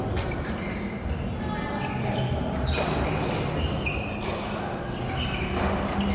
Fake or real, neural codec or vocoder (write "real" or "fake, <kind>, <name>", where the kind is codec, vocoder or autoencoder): real